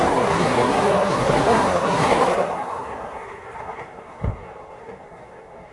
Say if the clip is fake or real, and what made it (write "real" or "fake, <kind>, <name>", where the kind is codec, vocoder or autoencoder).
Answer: fake, codec, SNAC